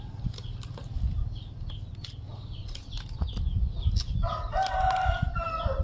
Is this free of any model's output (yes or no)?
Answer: yes